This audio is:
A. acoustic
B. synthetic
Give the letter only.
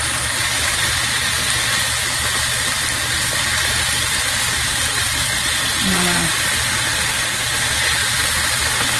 A